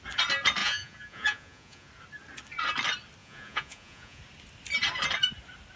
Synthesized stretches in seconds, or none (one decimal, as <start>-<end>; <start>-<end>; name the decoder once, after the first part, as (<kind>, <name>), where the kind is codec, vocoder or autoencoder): 0.6-1.9 (vocoder, Vocos); 3.2-4.2